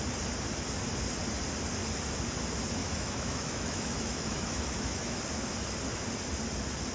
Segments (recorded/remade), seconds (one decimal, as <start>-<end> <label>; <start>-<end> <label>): 0.0-2.8 recorded; 2.8-5.2 remade; 5.2-6.9 recorded